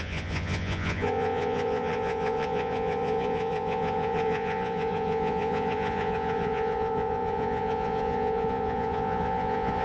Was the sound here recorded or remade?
remade